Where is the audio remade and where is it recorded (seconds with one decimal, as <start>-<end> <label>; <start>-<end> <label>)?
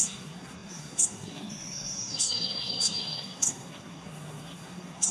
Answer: 0.0-5.1 remade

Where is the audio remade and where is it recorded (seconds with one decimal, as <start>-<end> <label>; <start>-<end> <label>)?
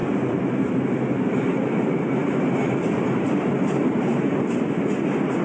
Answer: 0.0-0.7 remade; 0.7-1.5 recorded; 1.5-4.7 remade; 4.7-5.4 recorded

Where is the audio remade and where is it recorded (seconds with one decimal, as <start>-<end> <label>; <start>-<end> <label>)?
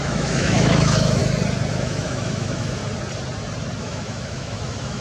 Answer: 0.0-1.2 remade; 1.2-1.7 recorded; 1.7-2.8 remade; 2.8-3.8 recorded; 3.8-5.0 remade